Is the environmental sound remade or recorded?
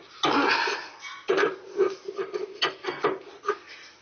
recorded